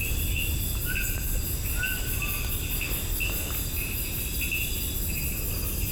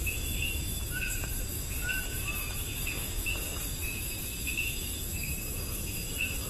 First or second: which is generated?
second